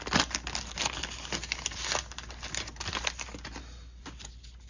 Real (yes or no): yes